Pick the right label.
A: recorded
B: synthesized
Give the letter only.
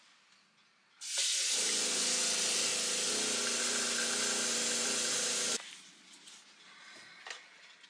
A